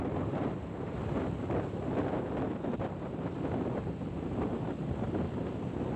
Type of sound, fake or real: real